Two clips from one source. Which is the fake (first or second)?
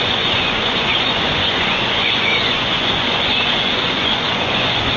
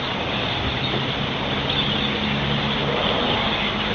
first